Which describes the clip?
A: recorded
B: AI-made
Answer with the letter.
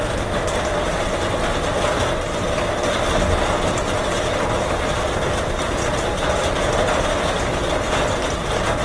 A